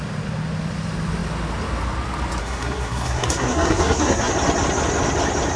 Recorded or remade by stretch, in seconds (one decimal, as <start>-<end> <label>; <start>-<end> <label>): 0.0-2.4 recorded; 2.4-4.3 remade; 4.3-5.6 recorded